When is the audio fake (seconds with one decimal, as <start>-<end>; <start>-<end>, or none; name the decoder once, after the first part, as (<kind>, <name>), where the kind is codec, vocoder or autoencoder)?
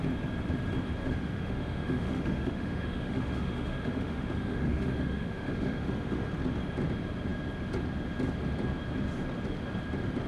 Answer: 1.0-6.3 (autoencoder, DAC-VAE)